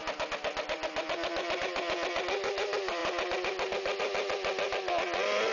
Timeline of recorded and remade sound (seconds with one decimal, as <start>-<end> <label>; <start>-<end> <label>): 0.0-5.5 recorded